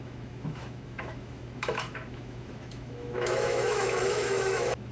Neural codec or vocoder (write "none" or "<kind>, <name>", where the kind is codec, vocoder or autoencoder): autoencoder, DAC-VAE